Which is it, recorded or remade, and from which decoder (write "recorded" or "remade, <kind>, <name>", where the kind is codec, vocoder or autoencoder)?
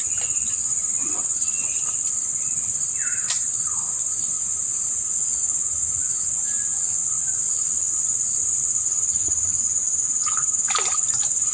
recorded